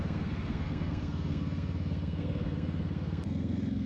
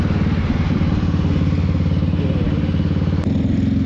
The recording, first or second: second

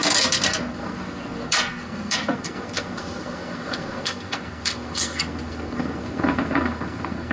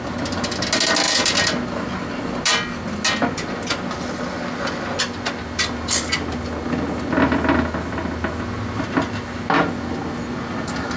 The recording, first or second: second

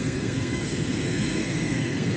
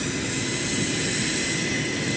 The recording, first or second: second